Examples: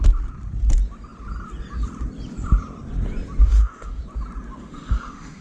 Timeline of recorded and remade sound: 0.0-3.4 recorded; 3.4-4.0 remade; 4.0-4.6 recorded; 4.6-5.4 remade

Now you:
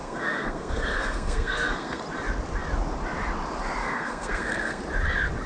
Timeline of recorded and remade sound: 0.0-2.0 remade; 2.0-3.8 recorded; 3.8-4.8 remade; 4.8-5.5 recorded

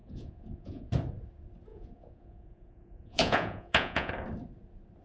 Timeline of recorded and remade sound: 0.0-0.9 remade; 0.9-1.7 recorded; 1.7-4.1 remade; 4.1-5.0 recorded

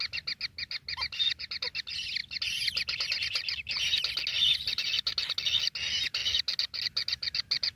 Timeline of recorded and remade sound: 0.0-7.8 recorded

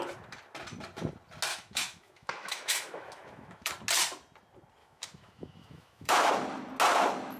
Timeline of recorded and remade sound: 0.0-1.5 recorded; 1.5-3.7 remade; 3.7-4.8 recorded; 4.8-6.3 remade; 6.3-7.4 recorded

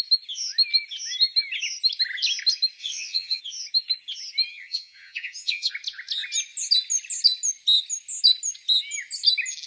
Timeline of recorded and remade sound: 0.0-2.8 recorded; 2.8-3.4 remade; 3.4-4.5 recorded; 4.5-5.7 remade; 5.7-9.7 recorded

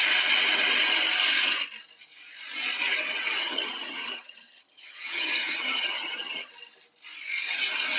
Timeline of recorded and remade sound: 0.0-3.4 recorded; 3.4-6.5 remade; 6.5-8.0 recorded